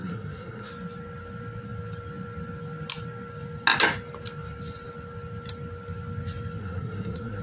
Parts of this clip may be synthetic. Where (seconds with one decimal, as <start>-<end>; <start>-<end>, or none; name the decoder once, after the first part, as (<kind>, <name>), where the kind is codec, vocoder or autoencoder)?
0.0-0.7 (codec, SNAC); 6.6-7.4